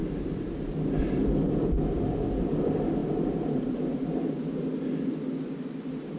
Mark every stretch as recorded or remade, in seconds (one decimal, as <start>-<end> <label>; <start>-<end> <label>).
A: 0.0-3.0 recorded; 3.0-4.0 remade; 4.0-6.2 recorded